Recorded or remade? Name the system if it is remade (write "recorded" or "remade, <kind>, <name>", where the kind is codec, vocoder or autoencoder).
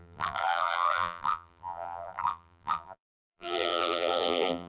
remade, vocoder, BigVGAN v2